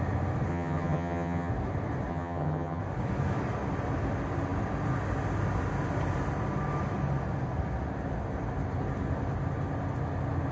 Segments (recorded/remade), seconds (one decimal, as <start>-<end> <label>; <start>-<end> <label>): 0.0-0.5 recorded; 0.5-1.5 remade; 1.5-2.1 recorded; 2.1-2.8 remade; 2.8-10.5 recorded